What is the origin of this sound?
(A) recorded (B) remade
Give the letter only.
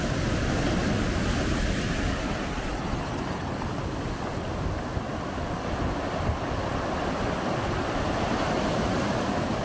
A